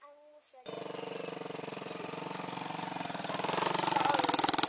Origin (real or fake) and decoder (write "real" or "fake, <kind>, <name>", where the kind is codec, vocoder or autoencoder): real